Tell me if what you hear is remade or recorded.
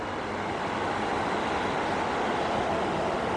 recorded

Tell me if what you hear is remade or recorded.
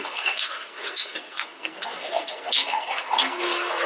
remade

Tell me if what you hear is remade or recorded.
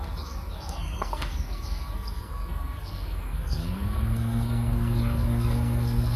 remade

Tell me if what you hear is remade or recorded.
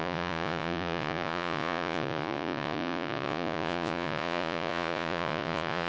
remade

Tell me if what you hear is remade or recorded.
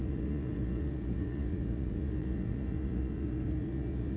remade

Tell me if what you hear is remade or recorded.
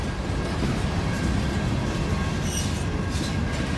recorded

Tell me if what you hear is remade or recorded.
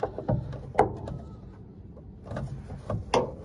recorded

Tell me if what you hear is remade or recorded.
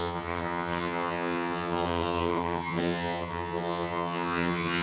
remade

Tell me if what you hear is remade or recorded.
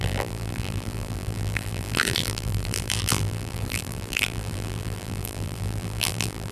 remade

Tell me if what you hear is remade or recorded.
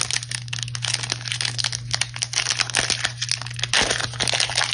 recorded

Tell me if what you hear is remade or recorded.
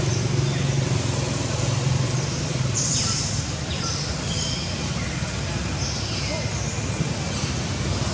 recorded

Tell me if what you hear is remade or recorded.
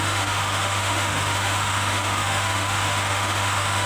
remade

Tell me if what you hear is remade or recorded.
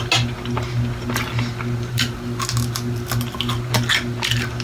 recorded